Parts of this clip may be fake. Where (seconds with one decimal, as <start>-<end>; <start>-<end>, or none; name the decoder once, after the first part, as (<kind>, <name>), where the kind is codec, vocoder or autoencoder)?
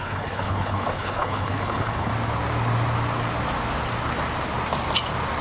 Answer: 0.0-2.1 (codec, HILCodec)